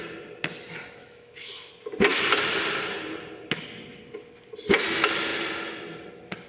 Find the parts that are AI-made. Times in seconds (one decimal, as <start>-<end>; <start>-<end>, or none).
1.0-1.7